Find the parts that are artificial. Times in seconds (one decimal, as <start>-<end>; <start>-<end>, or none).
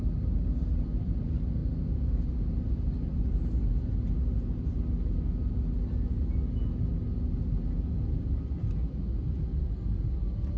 none